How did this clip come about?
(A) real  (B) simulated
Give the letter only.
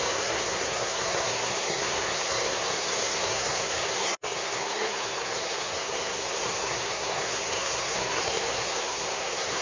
B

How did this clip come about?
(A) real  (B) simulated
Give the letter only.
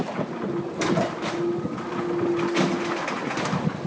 A